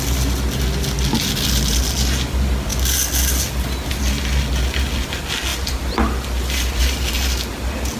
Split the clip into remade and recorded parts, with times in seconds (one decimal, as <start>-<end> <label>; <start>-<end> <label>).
0.0-8.0 recorded

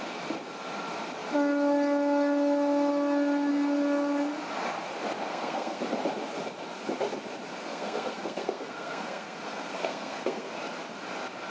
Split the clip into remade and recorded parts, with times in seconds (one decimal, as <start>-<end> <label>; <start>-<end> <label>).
0.0-5.3 recorded; 5.3-5.8 remade; 5.8-7.6 recorded; 7.6-10.5 remade; 10.5-11.5 recorded

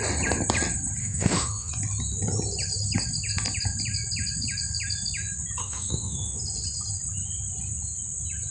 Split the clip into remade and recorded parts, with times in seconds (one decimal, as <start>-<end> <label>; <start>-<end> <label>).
0.0-1.0 recorded; 1.0-1.7 remade; 1.7-5.6 recorded; 5.6-6.4 remade; 6.4-8.5 recorded

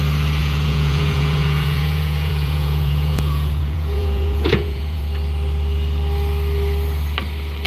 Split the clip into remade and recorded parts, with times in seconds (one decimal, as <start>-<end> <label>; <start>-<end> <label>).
0.0-0.4 recorded; 0.4-5.0 remade; 5.0-7.7 recorded

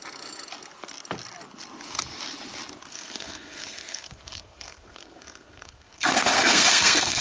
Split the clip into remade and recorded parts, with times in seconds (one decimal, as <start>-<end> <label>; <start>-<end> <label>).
0.0-2.9 recorded; 2.9-7.2 remade

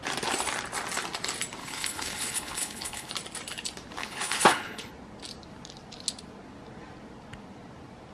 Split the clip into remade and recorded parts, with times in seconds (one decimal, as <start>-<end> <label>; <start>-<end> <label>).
0.0-1.6 recorded; 1.6-3.1 remade; 3.1-4.0 recorded; 4.0-4.9 remade; 4.9-8.1 recorded